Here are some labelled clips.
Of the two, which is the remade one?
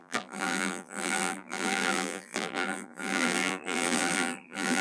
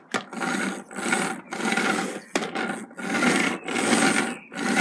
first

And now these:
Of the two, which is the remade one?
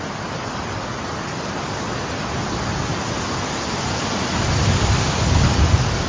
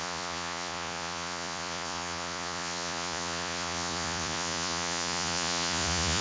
second